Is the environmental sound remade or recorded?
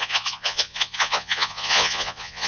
remade